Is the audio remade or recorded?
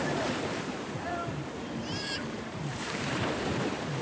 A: remade